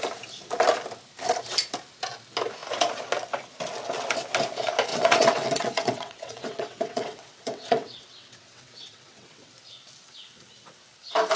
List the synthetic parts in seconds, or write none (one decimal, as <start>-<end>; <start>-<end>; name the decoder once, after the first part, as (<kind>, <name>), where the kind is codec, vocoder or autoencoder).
4.9-9.5 (vocoder, WaveNeXt)